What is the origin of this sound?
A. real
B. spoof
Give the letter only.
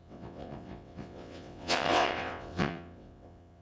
B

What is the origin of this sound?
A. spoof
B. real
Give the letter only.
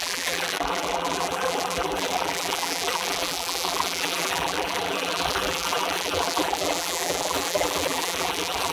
A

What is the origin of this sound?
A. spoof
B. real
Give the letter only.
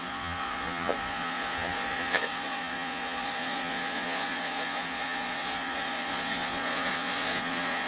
A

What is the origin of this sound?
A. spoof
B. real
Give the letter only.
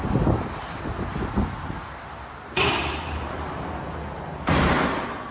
B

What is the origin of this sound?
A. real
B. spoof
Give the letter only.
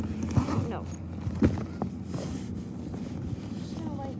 A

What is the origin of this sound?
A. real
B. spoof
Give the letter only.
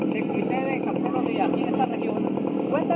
A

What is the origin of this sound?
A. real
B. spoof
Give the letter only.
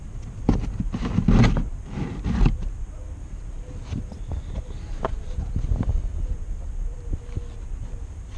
A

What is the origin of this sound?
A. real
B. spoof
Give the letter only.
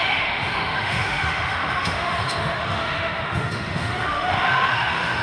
B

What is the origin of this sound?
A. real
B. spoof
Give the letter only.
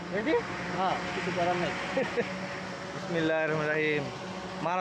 A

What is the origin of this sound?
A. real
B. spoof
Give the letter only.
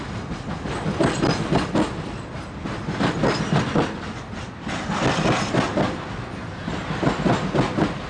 A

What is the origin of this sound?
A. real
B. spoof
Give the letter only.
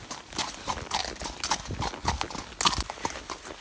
A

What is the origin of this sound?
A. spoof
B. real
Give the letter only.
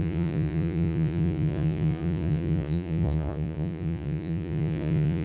A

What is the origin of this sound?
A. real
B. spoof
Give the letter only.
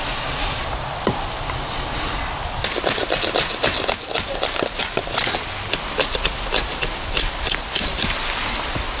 A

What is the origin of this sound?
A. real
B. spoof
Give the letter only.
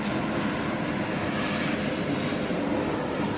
A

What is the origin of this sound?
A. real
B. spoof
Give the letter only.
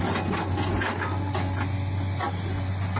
A